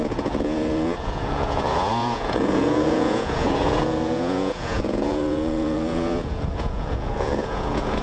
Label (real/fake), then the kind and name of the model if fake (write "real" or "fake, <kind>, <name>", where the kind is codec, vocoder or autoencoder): fake, vocoder, Vocos